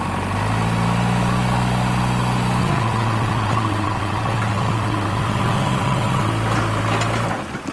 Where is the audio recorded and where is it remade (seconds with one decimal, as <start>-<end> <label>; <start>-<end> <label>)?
0.0-2.6 recorded; 2.6-6.3 remade; 6.3-7.7 recorded